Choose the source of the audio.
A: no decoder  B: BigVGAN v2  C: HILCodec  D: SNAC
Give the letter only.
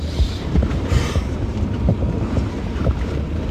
B